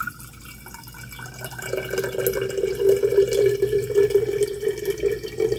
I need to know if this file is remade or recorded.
recorded